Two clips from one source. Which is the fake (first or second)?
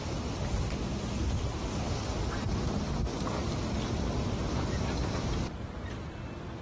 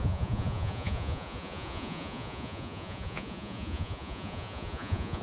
second